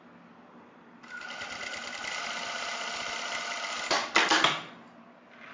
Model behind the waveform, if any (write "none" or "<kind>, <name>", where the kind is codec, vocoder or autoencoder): none